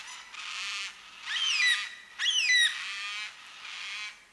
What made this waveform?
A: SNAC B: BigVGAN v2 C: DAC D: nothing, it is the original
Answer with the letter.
D